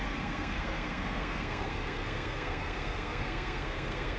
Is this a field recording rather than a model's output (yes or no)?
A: no